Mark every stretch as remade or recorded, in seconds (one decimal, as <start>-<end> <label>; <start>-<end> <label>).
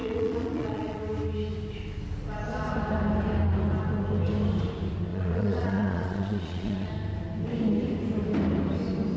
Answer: 0.0-1.0 remade; 1.0-5.1 recorded; 5.1-6.9 remade; 6.9-9.2 recorded